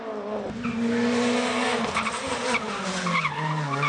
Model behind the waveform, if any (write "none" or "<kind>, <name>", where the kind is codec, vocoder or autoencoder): none